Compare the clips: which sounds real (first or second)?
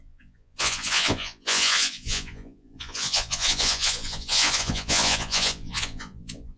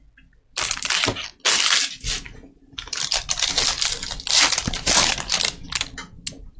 second